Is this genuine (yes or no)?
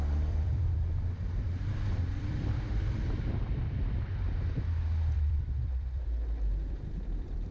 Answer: no